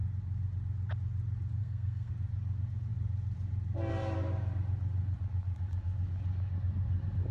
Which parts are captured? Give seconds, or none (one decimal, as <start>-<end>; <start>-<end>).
0.0-1.6; 2.1-7.3

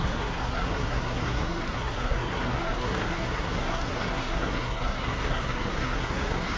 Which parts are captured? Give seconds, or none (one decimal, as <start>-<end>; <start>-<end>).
none

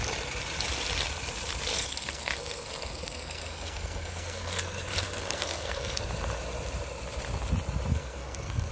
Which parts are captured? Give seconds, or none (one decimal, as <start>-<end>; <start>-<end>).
0.0-1.7; 6.1-7.9

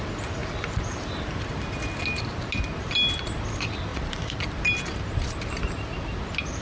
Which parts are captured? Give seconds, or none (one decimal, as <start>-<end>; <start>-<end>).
0.0-3.9; 4.4-6.6

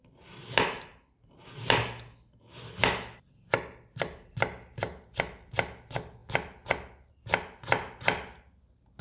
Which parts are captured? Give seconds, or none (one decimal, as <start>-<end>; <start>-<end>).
0.0-9.0

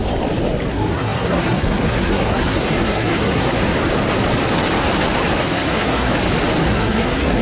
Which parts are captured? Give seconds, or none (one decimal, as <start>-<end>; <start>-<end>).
0.0-0.7; 3.6-5.4; 6.1-6.6

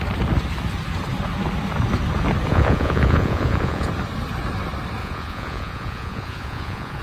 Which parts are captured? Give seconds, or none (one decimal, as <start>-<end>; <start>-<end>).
0.0-2.5; 3.9-5.0

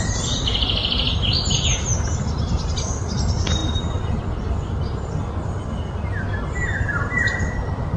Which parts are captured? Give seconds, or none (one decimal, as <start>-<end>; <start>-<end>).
0.0-8.0